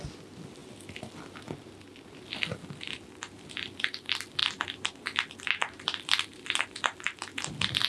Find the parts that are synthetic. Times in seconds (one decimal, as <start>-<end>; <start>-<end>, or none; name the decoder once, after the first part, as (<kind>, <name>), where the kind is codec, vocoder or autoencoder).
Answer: none